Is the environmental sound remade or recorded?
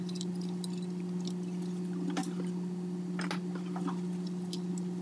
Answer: recorded